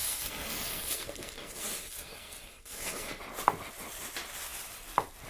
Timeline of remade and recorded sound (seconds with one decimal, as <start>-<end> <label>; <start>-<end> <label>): 0.0-3.2 remade; 3.2-5.3 recorded